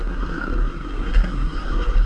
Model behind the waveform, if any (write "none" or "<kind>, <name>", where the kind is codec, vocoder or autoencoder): codec, SNAC